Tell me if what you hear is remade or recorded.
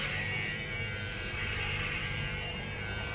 remade